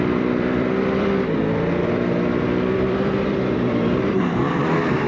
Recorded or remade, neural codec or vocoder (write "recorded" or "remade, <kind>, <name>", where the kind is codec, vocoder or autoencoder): remade, vocoder, BigVGAN v2